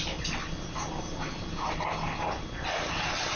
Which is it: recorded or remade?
recorded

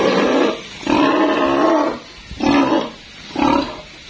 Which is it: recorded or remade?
recorded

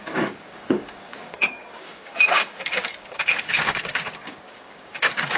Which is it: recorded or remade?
remade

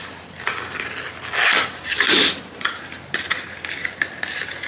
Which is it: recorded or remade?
recorded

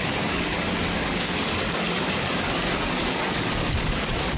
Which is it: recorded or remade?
remade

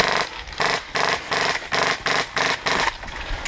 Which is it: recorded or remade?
recorded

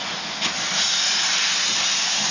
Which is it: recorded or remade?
recorded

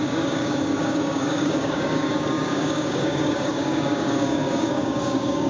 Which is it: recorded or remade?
remade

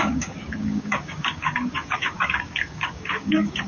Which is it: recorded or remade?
remade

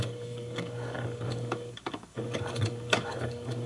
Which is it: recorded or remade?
remade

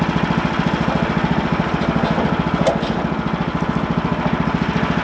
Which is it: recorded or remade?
recorded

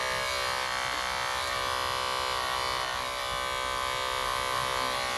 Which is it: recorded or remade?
recorded